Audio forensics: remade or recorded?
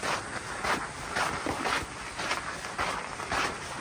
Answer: recorded